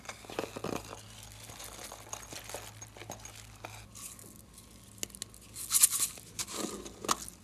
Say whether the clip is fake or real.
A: real